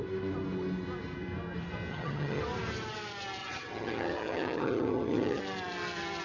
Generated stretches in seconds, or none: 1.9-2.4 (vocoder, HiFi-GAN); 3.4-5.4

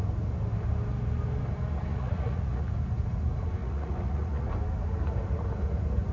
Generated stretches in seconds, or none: 1.9-2.6 (vocoder, Vocos); 3.6-4.5

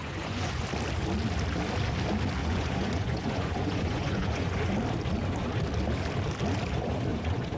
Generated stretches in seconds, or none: 0.0-0.6 (vocoder, Vocos); 2.4-4.7; 7.1-7.6